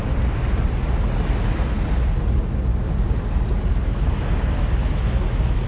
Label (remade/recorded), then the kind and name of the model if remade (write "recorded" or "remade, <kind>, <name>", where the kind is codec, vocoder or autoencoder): recorded